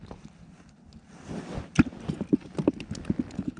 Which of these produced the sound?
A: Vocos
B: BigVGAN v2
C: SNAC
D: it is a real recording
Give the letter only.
D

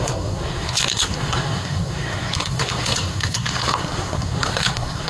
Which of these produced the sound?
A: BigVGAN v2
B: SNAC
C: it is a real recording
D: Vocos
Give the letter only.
B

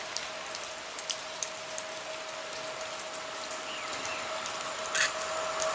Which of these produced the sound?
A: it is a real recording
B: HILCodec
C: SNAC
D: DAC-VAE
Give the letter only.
A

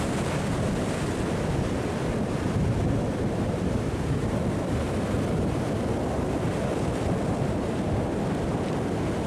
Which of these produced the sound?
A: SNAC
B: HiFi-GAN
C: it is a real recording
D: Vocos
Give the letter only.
C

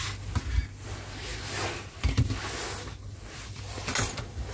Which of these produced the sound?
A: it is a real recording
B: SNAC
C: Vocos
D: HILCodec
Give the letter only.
A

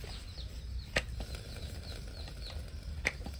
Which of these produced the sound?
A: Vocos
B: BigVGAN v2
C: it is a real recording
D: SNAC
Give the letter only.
C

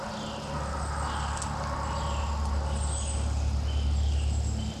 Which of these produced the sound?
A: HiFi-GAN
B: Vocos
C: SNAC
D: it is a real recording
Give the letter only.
D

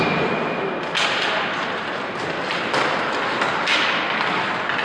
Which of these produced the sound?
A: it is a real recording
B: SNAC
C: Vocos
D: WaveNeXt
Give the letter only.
A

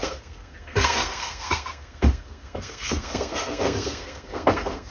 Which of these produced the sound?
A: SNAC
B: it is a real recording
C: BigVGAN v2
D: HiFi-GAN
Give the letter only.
A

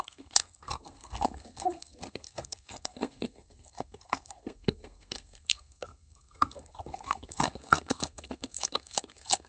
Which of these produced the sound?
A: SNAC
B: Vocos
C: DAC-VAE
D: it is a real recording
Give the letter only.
A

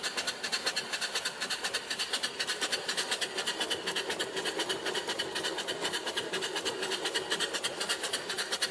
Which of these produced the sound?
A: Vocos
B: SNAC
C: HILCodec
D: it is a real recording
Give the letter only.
D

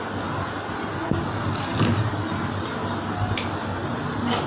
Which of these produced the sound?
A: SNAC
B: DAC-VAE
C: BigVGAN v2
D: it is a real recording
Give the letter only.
D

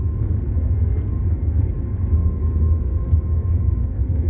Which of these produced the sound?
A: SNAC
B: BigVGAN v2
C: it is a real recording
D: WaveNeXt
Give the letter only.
A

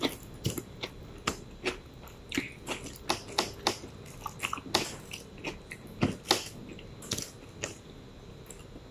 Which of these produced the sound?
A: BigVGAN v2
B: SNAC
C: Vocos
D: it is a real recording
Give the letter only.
D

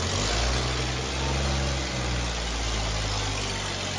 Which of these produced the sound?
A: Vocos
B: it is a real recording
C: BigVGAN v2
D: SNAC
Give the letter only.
B